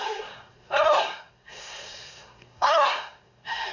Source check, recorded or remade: remade